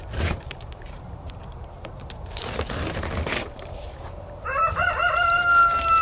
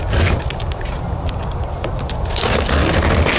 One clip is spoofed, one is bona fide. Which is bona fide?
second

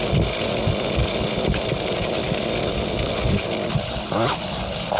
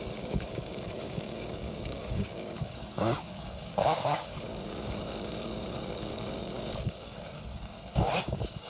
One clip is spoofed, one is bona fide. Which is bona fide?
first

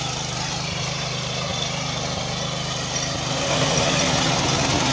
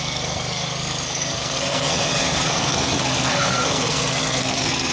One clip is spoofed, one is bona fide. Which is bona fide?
first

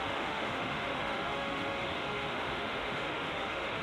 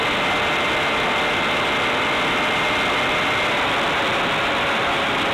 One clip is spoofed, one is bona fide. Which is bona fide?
second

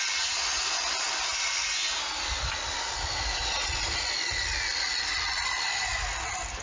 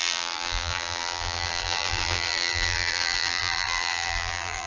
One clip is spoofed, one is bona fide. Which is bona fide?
first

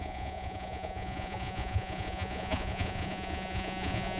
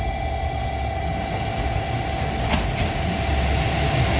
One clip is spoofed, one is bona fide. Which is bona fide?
second